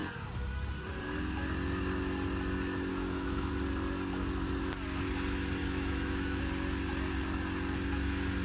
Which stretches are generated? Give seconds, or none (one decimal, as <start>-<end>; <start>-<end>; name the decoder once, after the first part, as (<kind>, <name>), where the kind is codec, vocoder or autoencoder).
2.9-3.5 (autoencoder, DAC-VAE); 5.6-6.4